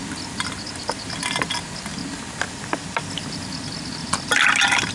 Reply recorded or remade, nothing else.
recorded